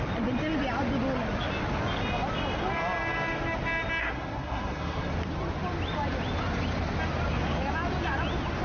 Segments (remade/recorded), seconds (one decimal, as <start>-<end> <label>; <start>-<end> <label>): 0.0-4.0 recorded; 4.0-5.1 remade; 5.1-8.6 recorded